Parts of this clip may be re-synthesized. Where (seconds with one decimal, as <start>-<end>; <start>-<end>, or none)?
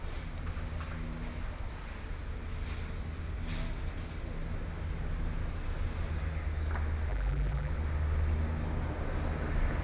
7.1-7.7